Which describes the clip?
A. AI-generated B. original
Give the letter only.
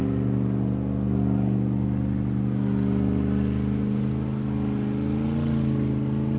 B